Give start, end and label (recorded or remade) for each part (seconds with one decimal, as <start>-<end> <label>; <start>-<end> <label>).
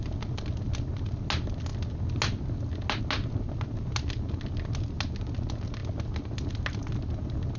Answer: 0.0-7.6 recorded